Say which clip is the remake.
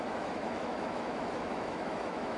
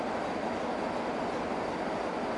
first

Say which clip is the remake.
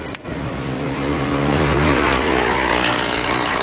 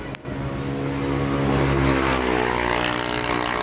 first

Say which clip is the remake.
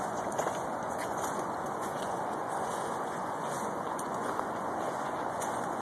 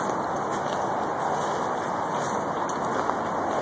first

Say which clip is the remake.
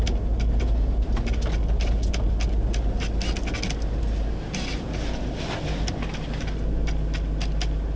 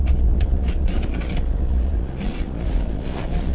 second